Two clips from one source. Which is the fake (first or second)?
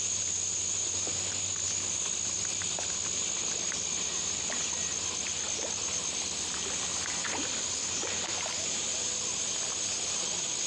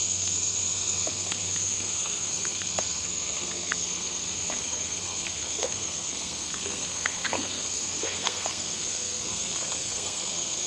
second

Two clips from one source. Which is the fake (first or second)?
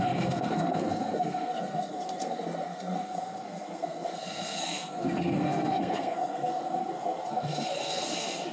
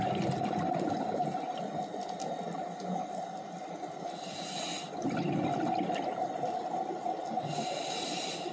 first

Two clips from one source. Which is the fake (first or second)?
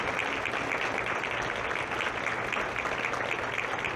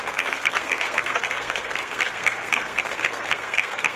second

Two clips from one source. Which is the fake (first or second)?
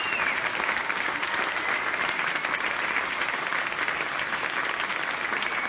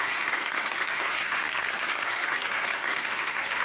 second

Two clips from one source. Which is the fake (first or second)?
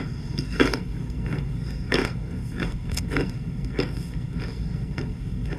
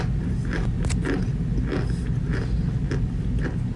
first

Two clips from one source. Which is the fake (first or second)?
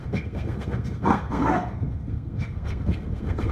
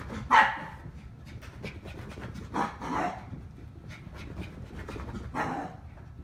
first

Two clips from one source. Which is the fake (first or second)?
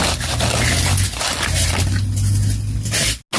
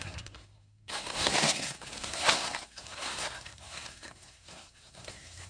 second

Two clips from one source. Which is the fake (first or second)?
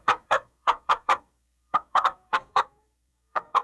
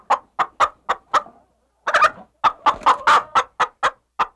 first